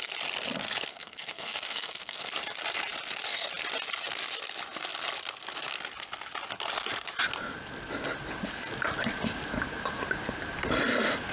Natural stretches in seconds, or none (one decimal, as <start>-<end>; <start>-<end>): 0.0-0.9; 2.3-11.3

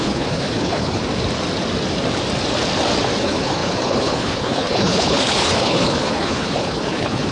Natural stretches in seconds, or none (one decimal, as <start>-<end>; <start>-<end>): 1.0-3.2

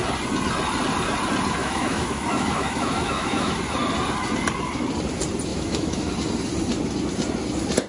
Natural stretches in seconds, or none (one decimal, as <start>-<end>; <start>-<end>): 0.0-1.6; 3.6-5.5; 6.1-7.9

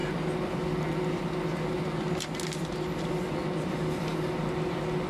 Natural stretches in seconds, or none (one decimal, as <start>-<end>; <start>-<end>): 0.0-5.1

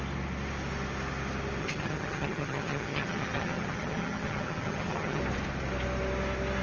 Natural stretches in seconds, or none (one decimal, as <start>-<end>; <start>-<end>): 0.0-1.6; 5.2-6.6

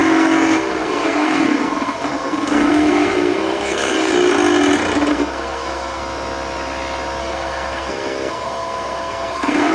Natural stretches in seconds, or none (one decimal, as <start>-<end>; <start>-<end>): 4.1-5.1; 6.0-7.2